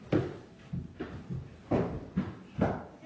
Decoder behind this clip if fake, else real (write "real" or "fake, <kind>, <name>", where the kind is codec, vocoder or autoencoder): real